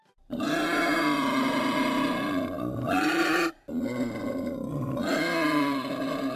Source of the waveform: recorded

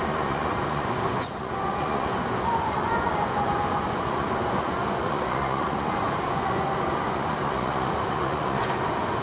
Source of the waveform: remade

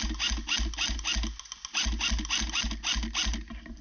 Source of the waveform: recorded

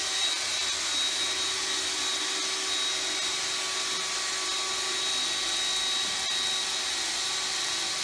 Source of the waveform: recorded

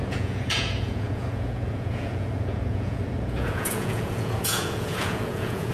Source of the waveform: remade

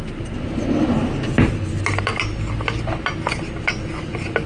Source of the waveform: recorded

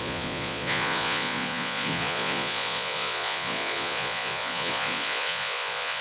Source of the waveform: remade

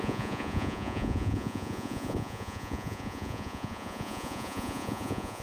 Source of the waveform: remade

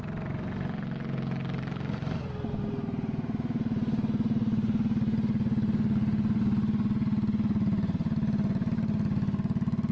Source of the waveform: recorded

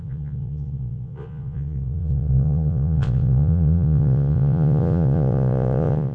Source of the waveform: remade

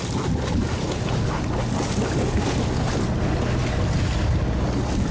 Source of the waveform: recorded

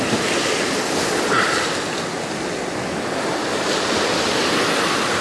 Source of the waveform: recorded